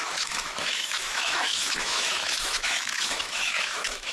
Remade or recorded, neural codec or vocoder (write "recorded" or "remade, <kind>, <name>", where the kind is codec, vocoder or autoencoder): remade, autoencoder, DAC-VAE